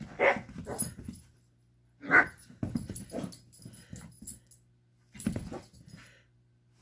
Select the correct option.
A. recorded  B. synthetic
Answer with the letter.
A